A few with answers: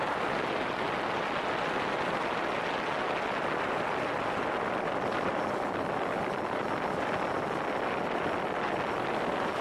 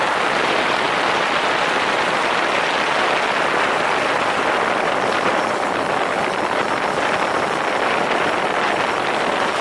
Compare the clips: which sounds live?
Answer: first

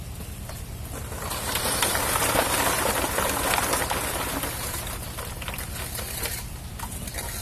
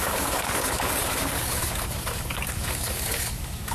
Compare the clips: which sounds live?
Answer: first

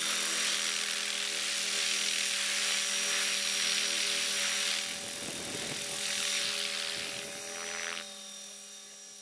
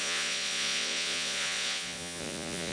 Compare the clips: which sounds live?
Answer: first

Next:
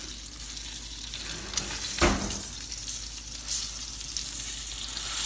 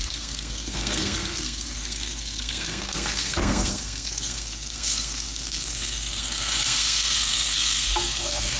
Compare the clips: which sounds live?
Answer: first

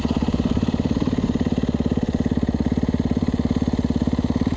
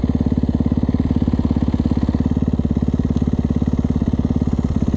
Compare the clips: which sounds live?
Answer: second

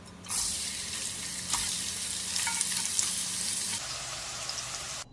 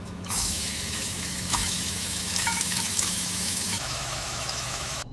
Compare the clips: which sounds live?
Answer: first